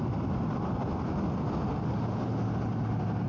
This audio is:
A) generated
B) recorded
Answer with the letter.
B